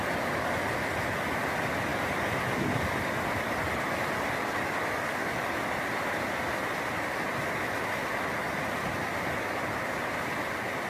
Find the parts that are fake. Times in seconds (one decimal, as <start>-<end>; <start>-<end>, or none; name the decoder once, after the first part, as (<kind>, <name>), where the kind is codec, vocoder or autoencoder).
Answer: none